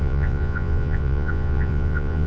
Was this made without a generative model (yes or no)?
no